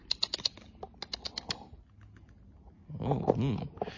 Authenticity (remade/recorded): recorded